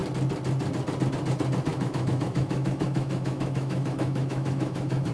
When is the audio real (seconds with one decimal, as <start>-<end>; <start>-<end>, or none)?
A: 0.0-1.7